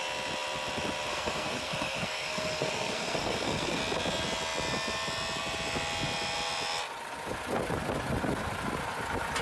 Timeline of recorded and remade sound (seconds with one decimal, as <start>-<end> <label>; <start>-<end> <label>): 0.0-1.1 recorded; 1.1-3.8 remade; 3.8-9.4 recorded